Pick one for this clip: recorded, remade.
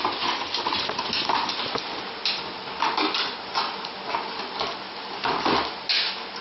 recorded